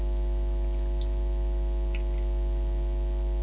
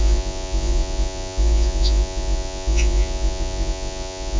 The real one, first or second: first